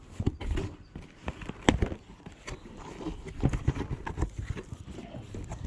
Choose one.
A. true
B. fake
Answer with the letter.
A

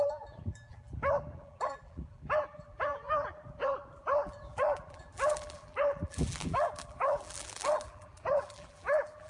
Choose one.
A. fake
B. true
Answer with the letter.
A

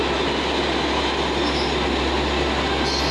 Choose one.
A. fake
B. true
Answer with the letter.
B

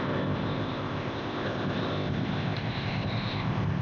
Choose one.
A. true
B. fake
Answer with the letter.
B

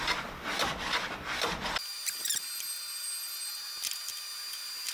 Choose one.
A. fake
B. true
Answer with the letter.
B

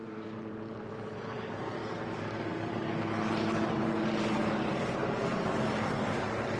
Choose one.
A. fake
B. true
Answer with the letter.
A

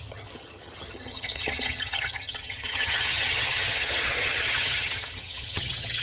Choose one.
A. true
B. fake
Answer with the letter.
B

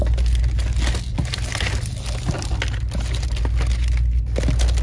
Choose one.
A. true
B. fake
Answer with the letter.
A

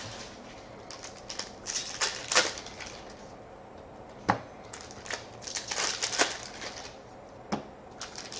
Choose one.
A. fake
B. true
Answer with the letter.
B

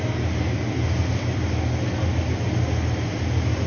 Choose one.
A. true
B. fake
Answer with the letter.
A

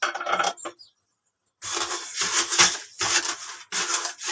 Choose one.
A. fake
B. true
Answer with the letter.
B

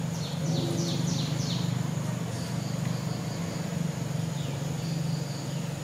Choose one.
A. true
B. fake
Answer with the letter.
A